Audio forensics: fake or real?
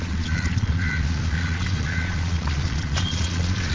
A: fake